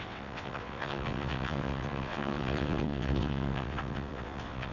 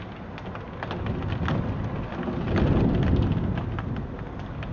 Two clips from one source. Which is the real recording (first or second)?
second